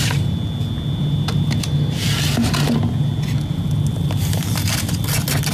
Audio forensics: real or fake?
real